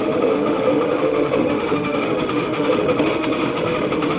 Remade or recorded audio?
remade